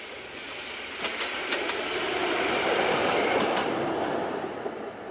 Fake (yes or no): yes